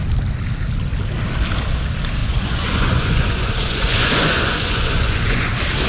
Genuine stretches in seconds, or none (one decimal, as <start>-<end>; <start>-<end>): 0.0-2.2; 5.5-5.9